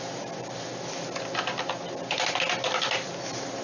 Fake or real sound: real